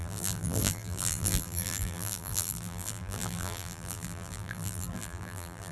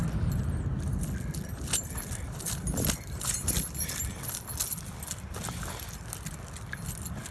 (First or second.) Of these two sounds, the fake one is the first